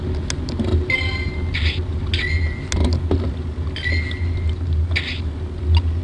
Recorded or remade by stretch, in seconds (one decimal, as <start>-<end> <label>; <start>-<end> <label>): 0.0-6.0 recorded